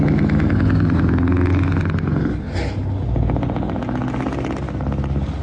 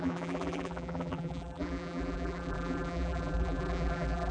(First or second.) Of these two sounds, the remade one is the second